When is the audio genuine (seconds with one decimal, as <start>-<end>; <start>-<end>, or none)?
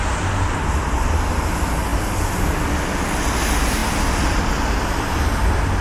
0.0-5.8